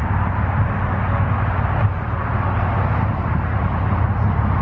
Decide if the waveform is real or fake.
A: real